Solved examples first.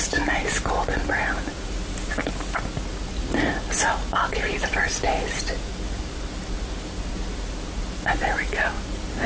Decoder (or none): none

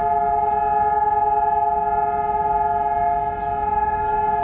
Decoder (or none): none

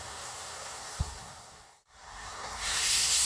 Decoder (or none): codec, SNAC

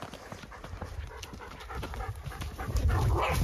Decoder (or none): none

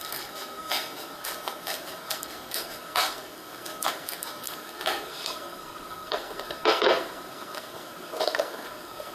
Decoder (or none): codec, SNAC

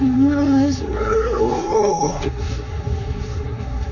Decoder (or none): codec, SNAC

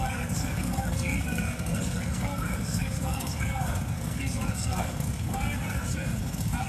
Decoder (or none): codec, SNAC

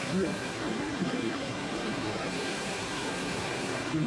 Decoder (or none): codec, SNAC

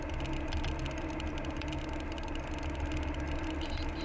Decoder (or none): none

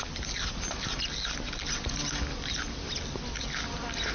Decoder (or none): none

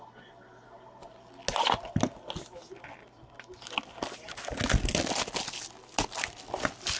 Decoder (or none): none